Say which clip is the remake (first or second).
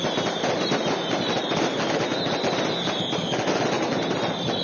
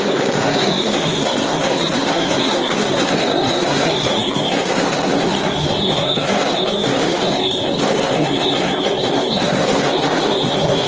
second